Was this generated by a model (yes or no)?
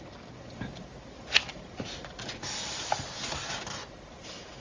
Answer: no